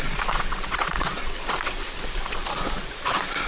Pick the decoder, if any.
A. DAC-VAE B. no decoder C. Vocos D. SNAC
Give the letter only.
C